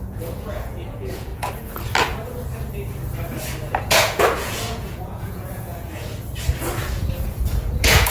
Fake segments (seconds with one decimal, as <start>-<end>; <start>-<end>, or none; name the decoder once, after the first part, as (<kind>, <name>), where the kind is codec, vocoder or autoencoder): 0.0-1.3 (vocoder, Vocos); 3.8-6.1; 6.6-8.1